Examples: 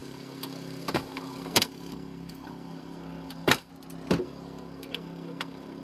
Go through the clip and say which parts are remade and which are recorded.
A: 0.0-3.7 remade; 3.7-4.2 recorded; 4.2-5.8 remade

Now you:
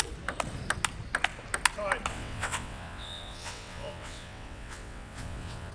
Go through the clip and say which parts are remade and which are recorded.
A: 0.0-2.1 recorded; 2.1-5.7 remade

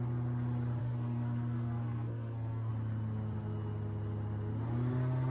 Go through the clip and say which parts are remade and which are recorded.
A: 0.0-0.8 recorded; 0.8-2.7 remade; 2.7-5.3 recorded

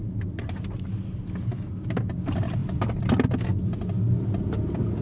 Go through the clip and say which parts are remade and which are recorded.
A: 0.0-5.0 recorded

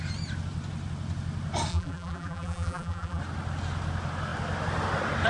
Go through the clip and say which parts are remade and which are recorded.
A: 0.0-1.7 recorded; 1.7-3.2 remade; 3.2-5.3 recorded

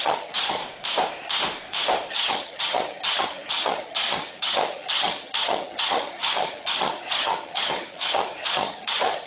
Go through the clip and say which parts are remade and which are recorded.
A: 0.0-0.6 remade; 0.6-2.1 recorded; 2.1-9.3 remade

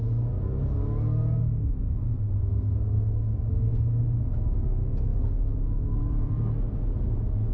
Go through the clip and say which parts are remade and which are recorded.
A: 0.0-1.4 recorded; 1.4-4.0 remade; 4.0-7.5 recorded